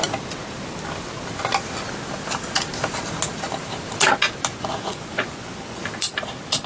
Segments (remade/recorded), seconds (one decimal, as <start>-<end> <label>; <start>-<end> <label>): 0.0-4.5 recorded; 4.5-5.8 remade; 5.8-6.7 recorded